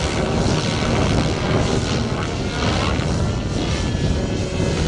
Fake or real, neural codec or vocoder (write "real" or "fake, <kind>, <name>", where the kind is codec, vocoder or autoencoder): real